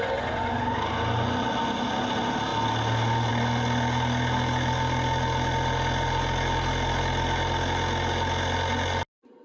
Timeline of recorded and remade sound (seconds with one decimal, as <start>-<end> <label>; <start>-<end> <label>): 0.0-9.4 recorded